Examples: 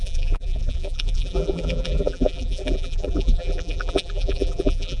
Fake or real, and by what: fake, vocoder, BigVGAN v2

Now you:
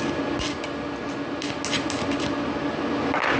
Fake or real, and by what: real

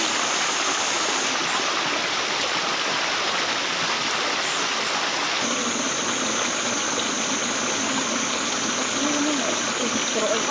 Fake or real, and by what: real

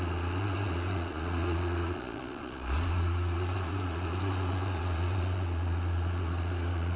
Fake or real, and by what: fake, vocoder, Vocos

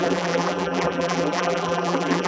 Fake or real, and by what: fake, vocoder, BigVGAN v2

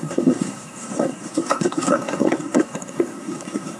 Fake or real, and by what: fake, codec, SNAC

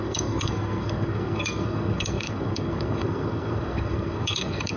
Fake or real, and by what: fake, codec, SNAC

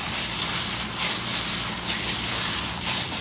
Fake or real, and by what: fake, vocoder, BigVGAN v2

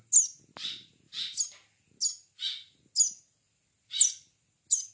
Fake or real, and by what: real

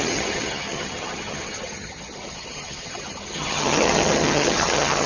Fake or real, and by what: fake, vocoder, HiFi-GAN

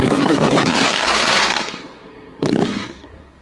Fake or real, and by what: fake, codec, SNAC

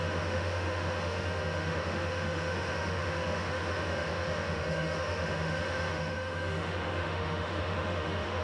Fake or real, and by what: fake, autoencoder, DAC-VAE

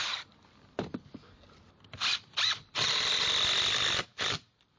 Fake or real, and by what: fake, vocoder, BigVGAN v2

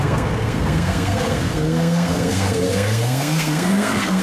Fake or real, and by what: fake, codec, SNAC